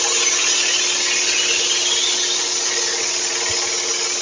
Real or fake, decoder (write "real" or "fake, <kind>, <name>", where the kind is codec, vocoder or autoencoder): real